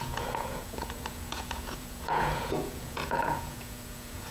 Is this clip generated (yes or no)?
yes